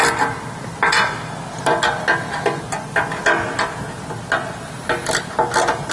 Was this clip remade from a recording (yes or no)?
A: no